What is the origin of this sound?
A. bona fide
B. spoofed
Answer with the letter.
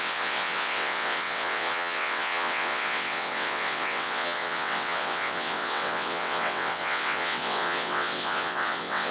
B